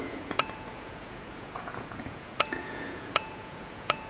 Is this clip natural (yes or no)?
no